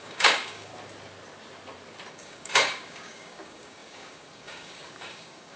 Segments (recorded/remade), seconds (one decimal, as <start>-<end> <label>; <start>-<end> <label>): 0.0-0.7 remade; 0.7-2.1 recorded; 2.1-5.6 remade